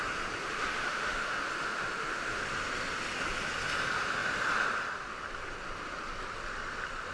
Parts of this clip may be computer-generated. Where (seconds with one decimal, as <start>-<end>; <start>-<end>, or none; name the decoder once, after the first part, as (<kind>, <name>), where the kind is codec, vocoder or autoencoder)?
0.4-2.4 (autoencoder, DAC-VAE)